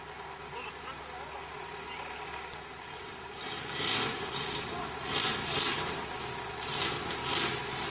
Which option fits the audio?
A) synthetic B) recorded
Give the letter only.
B